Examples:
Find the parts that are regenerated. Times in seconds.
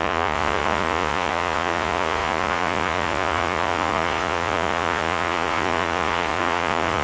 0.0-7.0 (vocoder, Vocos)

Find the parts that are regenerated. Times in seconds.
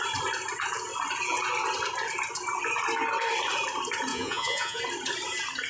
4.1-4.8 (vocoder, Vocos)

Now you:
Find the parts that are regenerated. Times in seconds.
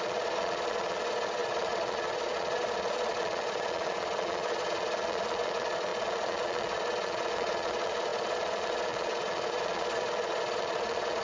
0.0-11.2 (vocoder, Vocos)